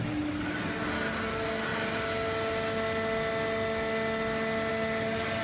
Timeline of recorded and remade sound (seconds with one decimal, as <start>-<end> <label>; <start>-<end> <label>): 0.0-5.4 recorded